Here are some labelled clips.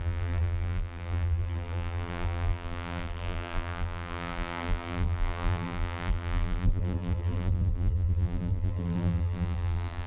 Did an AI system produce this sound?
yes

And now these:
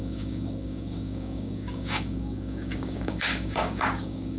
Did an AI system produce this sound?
yes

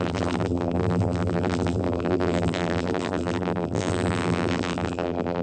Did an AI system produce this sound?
yes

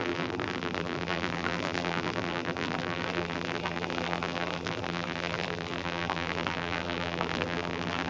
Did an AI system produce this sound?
yes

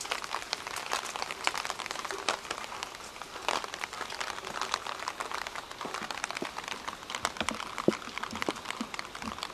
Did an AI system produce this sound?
no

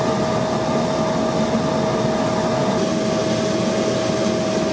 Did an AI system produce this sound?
no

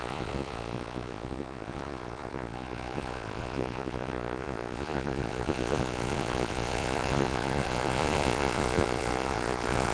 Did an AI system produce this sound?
yes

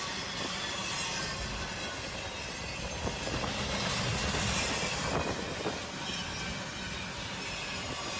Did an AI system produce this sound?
no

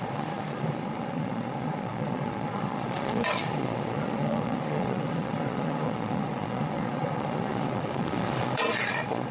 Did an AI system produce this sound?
yes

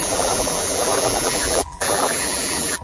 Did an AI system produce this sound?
yes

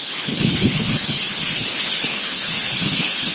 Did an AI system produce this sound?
yes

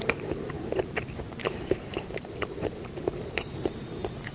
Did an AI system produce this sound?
yes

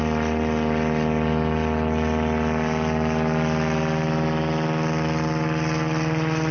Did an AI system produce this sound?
no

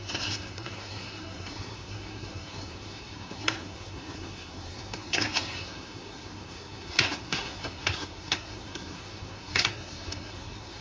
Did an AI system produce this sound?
yes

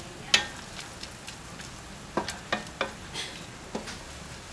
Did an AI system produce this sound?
no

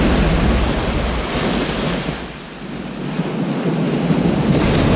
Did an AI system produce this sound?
no